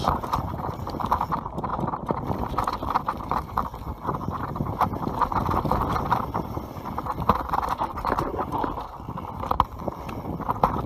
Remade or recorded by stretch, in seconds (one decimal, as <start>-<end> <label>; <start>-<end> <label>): 0.0-1.7 recorded; 1.7-2.5 remade; 2.5-10.9 recorded